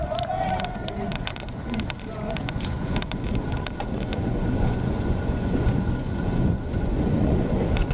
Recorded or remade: remade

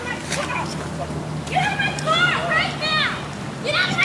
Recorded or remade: recorded